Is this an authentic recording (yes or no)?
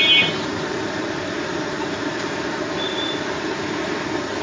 no